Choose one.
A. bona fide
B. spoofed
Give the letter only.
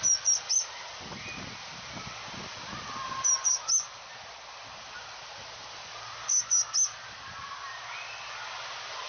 A